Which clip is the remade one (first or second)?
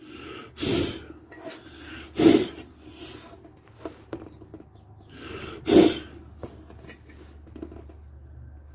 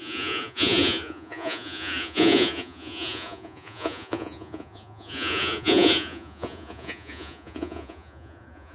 second